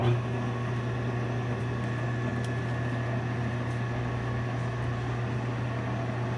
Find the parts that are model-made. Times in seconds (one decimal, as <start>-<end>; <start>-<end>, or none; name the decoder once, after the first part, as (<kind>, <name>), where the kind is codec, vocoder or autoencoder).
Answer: none